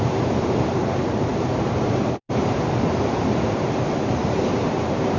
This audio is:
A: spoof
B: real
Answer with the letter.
A